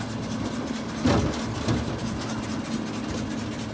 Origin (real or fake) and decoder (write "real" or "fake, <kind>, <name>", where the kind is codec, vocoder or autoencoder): real